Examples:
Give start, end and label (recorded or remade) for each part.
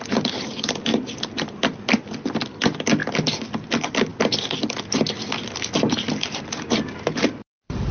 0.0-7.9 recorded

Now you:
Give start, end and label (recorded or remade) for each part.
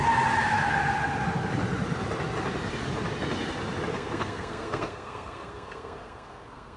0.0-3.9 recorded; 3.9-6.8 remade